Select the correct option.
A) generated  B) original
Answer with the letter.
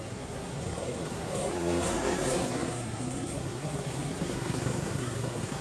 A